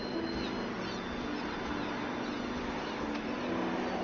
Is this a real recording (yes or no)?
yes